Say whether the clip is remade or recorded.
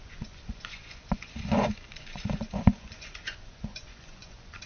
remade